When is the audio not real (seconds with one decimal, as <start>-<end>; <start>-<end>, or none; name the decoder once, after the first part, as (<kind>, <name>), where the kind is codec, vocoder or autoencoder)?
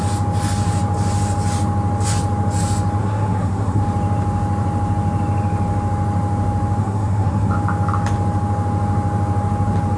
3.0-3.8 (codec, SNAC); 6.8-7.5